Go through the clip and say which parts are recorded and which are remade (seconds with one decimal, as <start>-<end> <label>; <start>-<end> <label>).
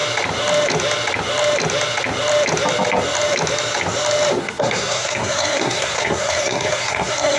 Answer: 0.0-4.4 recorded; 4.4-7.4 remade